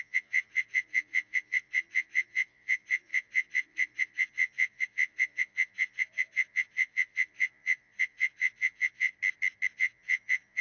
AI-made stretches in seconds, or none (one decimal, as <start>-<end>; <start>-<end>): 0.0-9.1; 9.7-10.6